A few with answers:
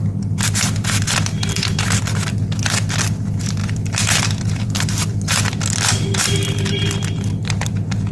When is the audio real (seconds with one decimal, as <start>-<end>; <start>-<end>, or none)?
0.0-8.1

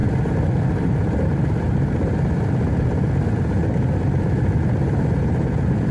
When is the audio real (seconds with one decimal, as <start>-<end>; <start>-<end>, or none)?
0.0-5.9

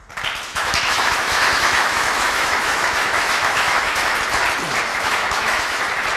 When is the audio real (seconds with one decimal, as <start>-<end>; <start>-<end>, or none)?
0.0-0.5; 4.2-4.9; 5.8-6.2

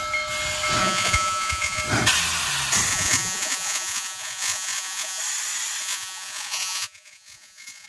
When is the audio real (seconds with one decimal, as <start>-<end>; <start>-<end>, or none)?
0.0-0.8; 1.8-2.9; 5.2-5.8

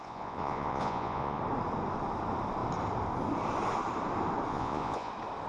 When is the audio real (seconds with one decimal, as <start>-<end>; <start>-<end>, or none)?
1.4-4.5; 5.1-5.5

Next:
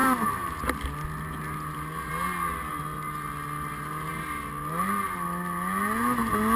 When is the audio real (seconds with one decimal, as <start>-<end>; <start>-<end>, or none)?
0.0-6.6

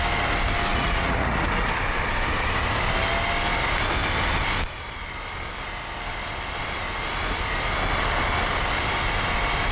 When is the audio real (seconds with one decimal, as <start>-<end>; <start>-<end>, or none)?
0.0-0.7; 1.7-9.7